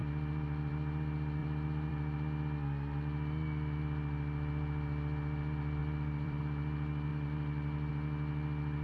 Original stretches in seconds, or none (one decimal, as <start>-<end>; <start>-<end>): 0.7-1.4; 1.9-5.8; 6.4-7.1; 7.9-8.8